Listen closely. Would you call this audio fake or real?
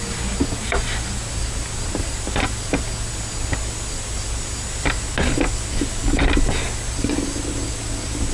real